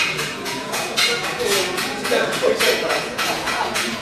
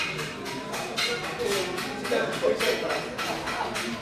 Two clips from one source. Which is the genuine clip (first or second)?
second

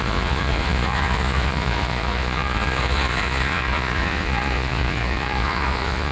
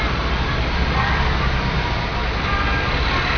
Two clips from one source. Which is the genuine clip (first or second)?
second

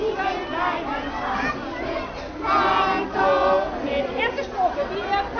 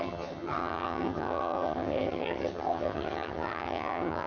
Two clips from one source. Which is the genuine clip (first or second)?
first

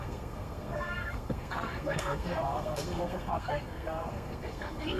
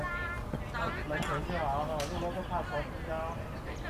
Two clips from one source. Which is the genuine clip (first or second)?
second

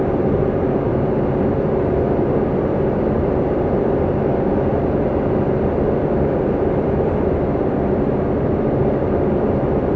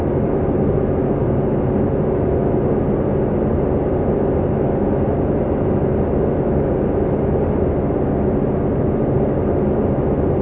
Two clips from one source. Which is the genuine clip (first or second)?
second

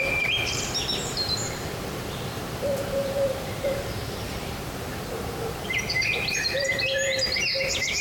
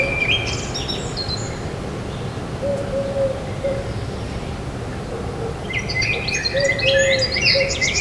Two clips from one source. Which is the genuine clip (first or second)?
second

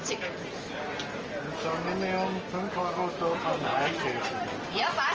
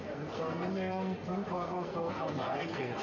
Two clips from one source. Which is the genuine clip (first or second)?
first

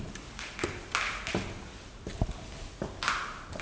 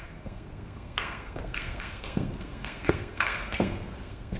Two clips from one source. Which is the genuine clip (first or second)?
first